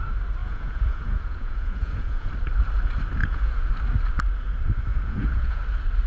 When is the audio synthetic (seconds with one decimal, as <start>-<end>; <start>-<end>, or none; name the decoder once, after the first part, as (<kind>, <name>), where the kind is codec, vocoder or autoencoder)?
0.4-2.3 (vocoder, Vocos); 3.2-3.7; 4.9-5.6